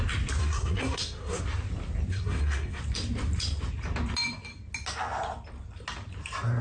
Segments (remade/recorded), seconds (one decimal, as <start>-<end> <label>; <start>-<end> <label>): 0.0-0.4 recorded; 0.4-1.4 remade; 1.4-2.1 recorded; 2.1-2.8 remade; 2.8-6.6 recorded